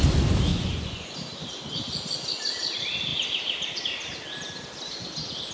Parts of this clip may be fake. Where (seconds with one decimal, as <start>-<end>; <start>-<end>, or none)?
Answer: 0.5-1.1